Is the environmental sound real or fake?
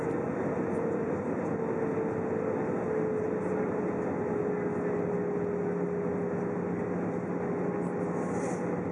real